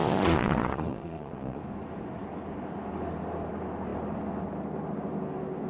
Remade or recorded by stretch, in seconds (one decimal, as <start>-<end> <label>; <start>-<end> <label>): 0.0-1.6 remade; 1.6-5.7 recorded